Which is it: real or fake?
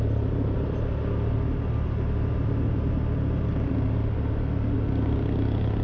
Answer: real